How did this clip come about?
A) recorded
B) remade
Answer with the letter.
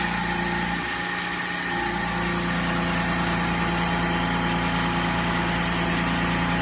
A